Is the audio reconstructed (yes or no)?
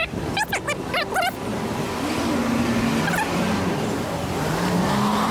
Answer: no